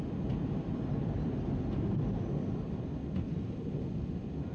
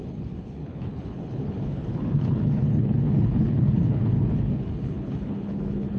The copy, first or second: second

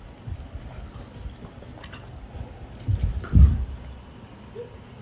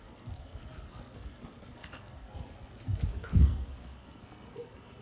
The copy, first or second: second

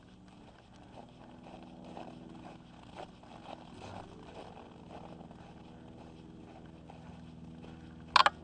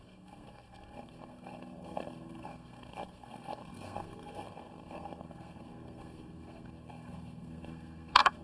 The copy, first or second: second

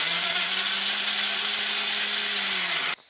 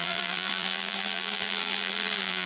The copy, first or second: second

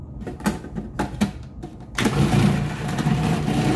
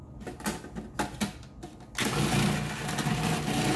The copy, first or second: first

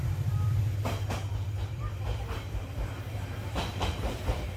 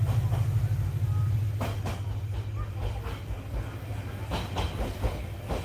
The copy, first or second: first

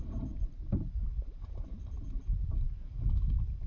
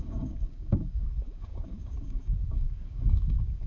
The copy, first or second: second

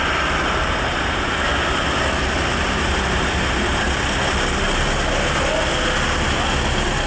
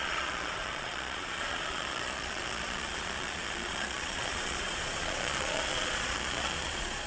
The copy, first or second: second